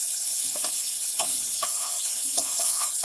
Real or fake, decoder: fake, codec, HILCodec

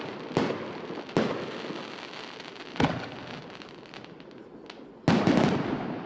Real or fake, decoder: real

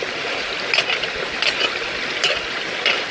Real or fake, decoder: real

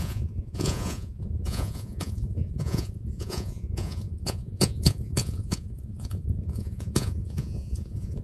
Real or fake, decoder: fake, vocoder, Vocos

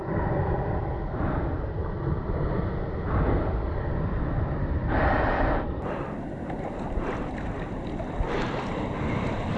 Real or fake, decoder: real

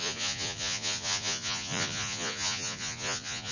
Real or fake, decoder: fake, vocoder, Vocos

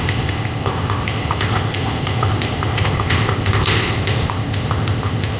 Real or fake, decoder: fake, codec, ZipCodec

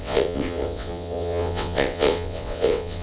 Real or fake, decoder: fake, vocoder, WaveNeXt